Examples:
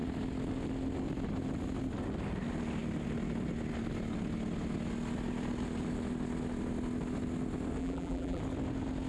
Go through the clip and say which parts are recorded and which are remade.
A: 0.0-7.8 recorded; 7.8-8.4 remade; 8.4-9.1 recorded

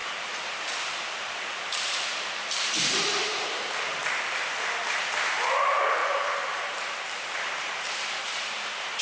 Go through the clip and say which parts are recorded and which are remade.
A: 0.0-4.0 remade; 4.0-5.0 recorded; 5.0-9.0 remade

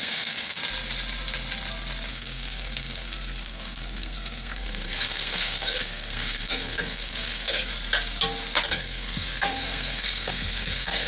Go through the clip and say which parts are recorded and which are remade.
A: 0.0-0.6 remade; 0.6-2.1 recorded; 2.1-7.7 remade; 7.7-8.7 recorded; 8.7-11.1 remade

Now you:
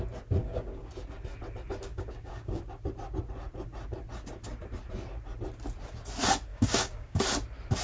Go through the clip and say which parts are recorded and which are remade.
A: 0.0-0.4 recorded; 0.4-0.9 remade; 0.9-1.9 recorded; 1.9-2.6 remade; 2.6-6.5 recorded; 6.5-7.2 remade; 7.2-7.8 recorded

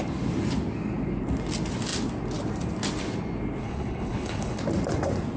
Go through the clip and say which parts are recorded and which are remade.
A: 0.0-3.6 recorded; 3.6-4.6 remade; 4.6-5.4 recorded

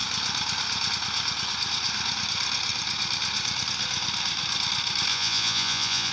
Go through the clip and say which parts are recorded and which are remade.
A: 0.0-5.1 recorded; 5.1-6.1 remade

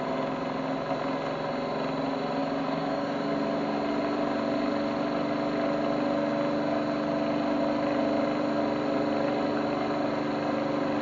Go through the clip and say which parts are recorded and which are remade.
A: 0.0-2.4 recorded; 2.4-3.3 remade; 3.3-11.0 recorded